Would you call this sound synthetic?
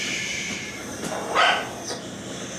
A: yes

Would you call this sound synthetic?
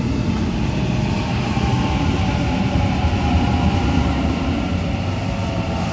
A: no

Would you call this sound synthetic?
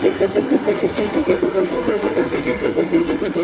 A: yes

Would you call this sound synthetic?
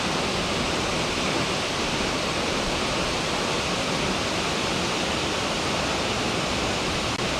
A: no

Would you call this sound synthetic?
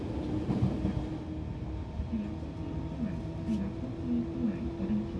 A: no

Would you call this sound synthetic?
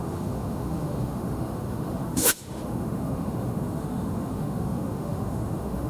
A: yes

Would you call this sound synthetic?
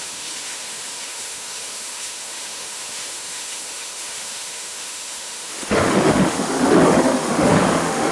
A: yes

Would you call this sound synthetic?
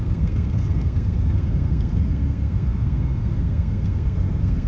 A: yes